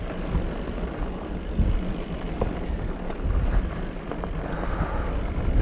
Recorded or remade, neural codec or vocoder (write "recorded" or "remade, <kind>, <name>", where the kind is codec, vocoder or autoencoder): recorded